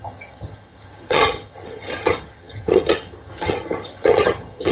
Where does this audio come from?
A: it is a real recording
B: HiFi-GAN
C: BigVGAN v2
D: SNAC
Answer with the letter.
B